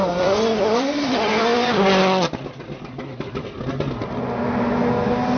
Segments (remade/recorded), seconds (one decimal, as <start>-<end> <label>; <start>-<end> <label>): 0.0-5.4 recorded